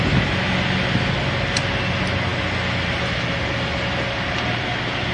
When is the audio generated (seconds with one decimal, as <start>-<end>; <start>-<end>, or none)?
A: none